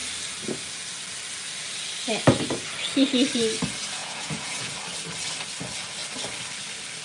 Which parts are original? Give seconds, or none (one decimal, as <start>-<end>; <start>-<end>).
0.0-4.0; 4.7-7.0